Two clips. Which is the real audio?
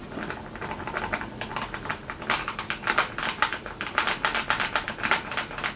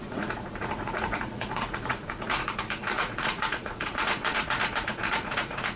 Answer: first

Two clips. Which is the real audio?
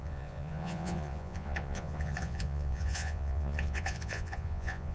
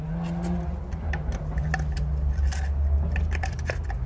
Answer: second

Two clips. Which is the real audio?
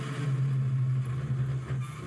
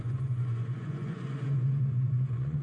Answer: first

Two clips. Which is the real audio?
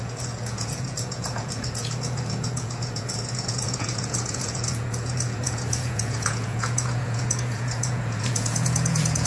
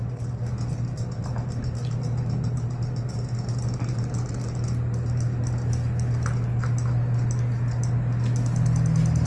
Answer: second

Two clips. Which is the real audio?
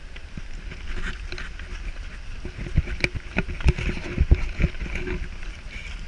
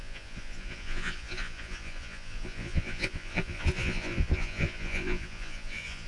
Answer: first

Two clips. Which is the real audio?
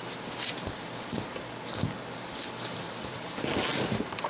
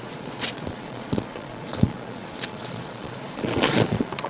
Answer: first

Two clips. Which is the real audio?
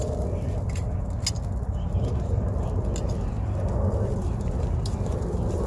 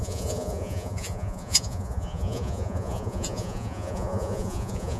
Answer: first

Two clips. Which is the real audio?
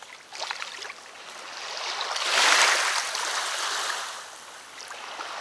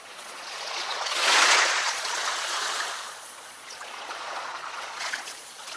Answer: first